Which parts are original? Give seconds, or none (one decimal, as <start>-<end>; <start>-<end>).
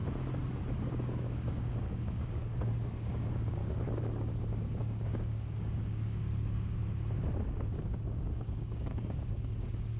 0.0-0.7; 3.6-4.4; 6.8-7.7